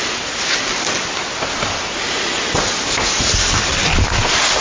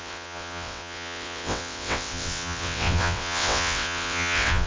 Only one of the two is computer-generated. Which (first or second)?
second